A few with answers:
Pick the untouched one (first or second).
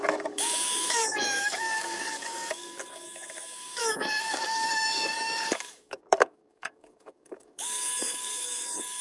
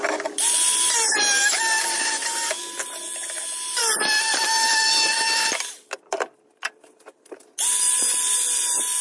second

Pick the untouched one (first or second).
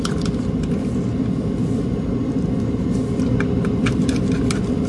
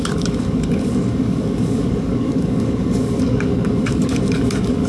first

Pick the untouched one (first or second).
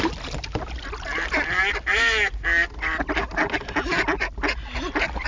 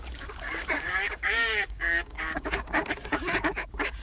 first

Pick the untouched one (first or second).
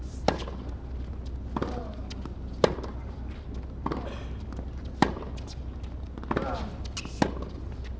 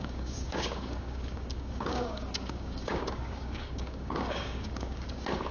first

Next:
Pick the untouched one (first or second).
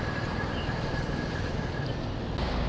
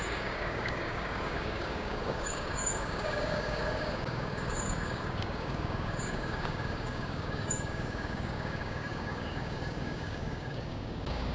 first